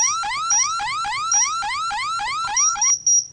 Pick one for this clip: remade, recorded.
recorded